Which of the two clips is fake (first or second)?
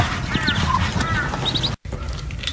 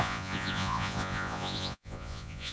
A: second